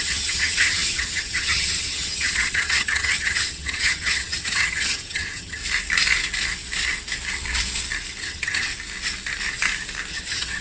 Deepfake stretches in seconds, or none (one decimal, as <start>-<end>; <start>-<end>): 0.0-5.6; 8.2-8.7; 10.1-10.6